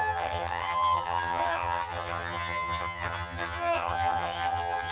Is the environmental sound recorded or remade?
remade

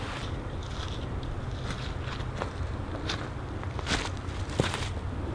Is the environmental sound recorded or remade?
recorded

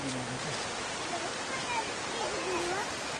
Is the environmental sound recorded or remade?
recorded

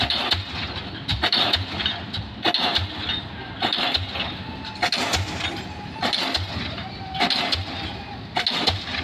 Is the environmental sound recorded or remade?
recorded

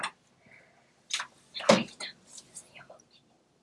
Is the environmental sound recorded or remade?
recorded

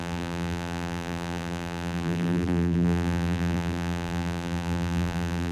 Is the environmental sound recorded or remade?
remade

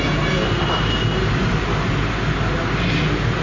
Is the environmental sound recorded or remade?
recorded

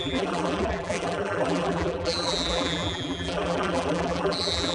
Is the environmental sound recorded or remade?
remade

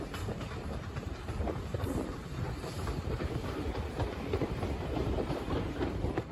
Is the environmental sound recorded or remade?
remade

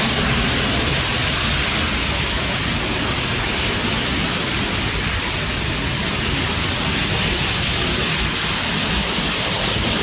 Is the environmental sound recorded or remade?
recorded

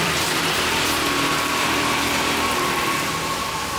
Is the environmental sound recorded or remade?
remade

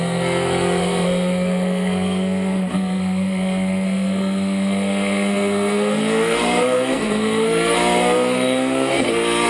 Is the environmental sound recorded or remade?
remade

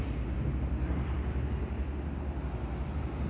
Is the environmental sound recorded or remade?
recorded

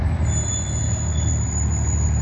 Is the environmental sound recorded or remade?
recorded